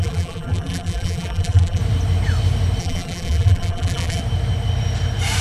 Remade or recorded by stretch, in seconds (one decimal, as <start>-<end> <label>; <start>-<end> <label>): 0.0-1.8 remade; 1.8-2.8 recorded; 2.8-4.2 remade; 4.2-5.4 recorded